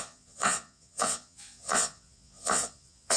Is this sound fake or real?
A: fake